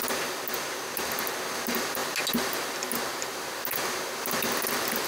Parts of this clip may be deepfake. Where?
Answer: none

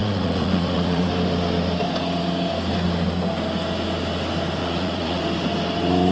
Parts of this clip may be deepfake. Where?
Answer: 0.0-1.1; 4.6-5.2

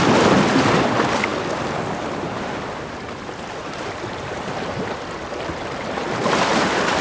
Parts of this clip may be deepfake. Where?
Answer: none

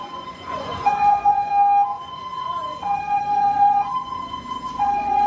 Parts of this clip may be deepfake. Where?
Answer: 0.0-1.5; 1.9-5.3

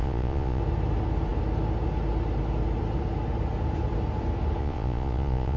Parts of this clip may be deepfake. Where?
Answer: 0.0-0.6; 4.6-5.6